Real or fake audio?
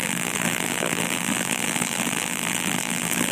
fake